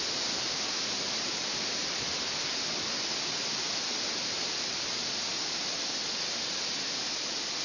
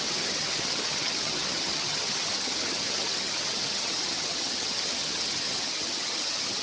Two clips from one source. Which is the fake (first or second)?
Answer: second